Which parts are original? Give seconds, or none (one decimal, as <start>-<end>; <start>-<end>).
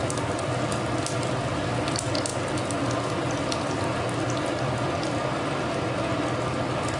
0.0-7.0